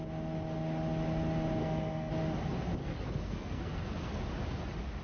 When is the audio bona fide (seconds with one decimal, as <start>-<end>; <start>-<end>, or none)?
0.0-1.6; 2.1-2.8; 4.1-5.0